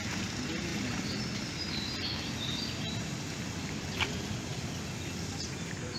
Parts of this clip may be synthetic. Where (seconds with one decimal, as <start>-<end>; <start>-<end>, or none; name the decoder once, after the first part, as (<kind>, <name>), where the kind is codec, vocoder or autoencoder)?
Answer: none